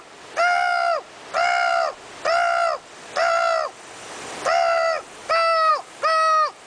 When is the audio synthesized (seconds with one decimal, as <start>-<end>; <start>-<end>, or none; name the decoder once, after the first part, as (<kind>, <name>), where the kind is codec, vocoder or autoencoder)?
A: none